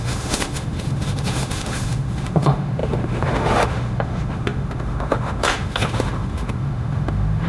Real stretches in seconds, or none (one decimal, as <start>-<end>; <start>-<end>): none